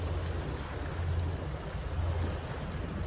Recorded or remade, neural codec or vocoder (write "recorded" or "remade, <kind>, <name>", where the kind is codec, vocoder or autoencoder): recorded